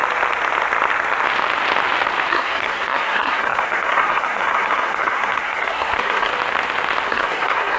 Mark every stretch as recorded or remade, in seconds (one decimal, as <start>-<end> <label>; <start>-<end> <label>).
0.0-2.3 recorded; 2.3-6.3 remade; 6.3-7.1 recorded; 7.1-7.8 remade